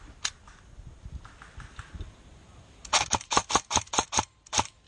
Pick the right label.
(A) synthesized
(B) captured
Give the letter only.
B